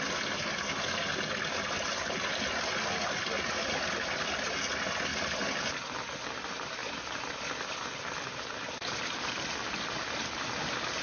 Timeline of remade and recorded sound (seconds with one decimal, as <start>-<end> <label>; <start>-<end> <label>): 0.0-11.0 recorded